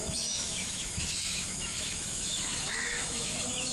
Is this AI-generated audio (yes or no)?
yes